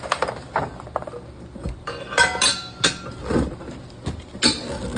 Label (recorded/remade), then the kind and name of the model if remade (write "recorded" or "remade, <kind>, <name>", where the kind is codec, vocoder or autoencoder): recorded